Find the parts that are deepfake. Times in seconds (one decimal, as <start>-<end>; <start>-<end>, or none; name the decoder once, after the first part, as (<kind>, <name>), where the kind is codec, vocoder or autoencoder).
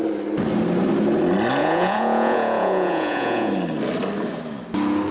1.6-3.5 (vocoder, Vocos)